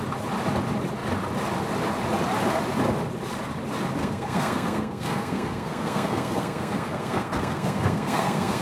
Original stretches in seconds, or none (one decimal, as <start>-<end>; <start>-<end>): 0.0-4.0